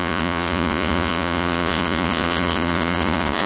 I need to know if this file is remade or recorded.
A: remade